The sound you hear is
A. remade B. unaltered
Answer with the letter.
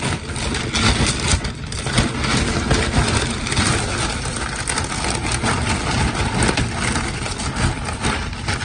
B